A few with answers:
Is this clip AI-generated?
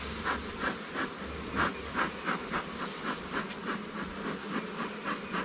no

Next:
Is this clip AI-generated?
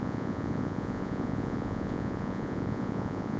yes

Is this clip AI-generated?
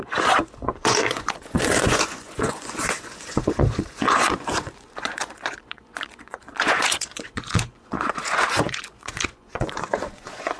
yes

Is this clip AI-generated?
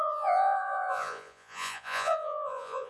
yes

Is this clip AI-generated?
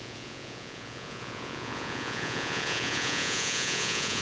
yes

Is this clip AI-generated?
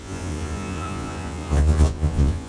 yes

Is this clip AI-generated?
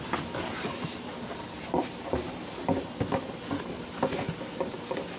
no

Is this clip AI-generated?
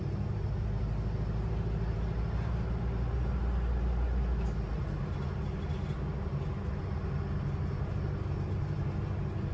no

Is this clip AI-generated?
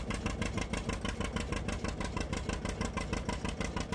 no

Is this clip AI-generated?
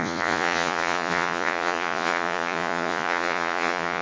yes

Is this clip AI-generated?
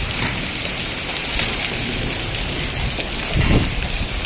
no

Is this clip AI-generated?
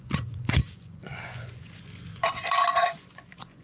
yes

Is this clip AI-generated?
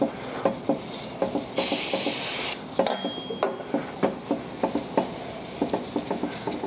no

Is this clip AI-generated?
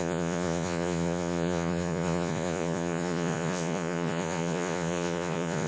yes